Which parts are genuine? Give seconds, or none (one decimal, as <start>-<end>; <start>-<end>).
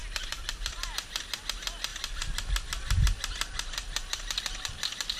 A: 0.9-1.9; 4.4-5.2